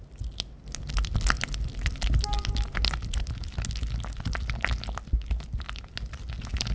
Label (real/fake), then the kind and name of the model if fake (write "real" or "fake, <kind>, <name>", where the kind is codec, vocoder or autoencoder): real